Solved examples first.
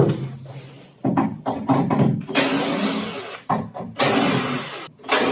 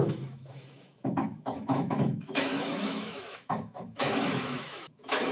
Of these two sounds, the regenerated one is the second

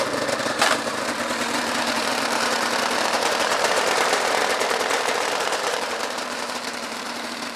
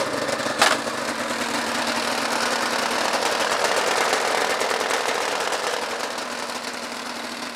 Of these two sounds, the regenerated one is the first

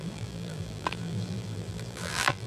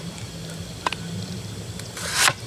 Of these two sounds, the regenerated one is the first